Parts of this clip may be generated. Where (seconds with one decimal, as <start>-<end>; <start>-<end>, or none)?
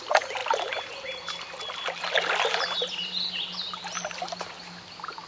none